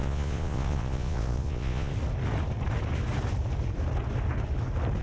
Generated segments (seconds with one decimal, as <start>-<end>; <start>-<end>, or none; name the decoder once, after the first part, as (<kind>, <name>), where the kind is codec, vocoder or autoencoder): 0.0-1.9 (vocoder, Vocos)

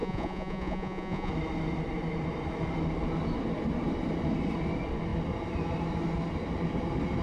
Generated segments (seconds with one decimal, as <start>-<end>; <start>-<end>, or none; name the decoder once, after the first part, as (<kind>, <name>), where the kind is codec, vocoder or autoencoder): 0.0-1.3 (vocoder, Vocos)

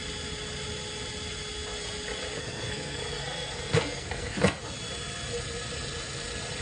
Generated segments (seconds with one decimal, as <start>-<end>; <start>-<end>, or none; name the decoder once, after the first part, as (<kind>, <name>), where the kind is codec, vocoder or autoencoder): 2.4-4.6 (codec, SNAC)

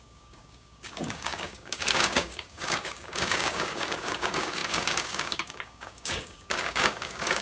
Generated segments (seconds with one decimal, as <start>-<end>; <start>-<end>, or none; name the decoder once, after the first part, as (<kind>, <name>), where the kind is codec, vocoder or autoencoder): 0.0-7.4 (codec, DAC)

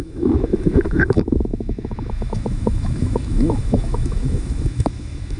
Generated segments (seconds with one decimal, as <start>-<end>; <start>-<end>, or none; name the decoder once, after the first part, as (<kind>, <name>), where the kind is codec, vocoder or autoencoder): 0.0-5.4 (autoencoder, DAC-VAE)

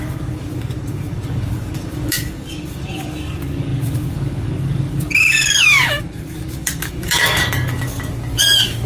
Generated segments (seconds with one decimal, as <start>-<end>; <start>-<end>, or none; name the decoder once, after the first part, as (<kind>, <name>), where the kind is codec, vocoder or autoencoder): 0.0-8.9 (codec, DAC)

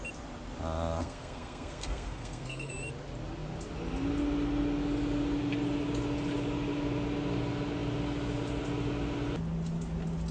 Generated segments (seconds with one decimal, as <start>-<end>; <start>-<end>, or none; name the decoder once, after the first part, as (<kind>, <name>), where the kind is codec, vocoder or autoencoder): 1.0-2.7 (codec, SNAC)

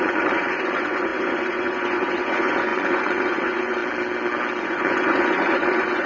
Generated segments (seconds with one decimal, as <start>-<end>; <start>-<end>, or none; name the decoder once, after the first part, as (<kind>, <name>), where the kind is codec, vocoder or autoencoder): 0.0-3.8 (vocoder, Vocos); 4.6-6.1